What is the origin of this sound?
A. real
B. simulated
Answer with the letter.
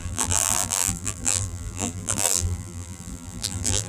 B